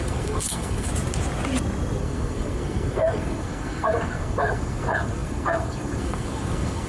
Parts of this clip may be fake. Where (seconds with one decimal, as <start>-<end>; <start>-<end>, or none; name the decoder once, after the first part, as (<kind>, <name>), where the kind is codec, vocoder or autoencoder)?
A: 0.0-0.9 (codec, SNAC); 2.0-6.9